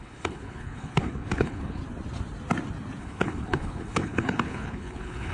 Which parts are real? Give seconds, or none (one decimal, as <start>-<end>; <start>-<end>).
1.8-3.0